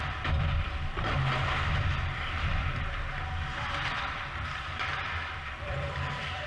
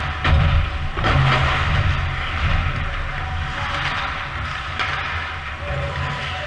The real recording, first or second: second